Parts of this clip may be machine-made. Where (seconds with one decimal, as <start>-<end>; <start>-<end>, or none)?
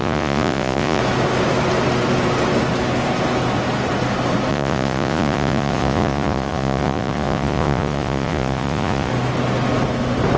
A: 0.0-1.0; 4.5-9.1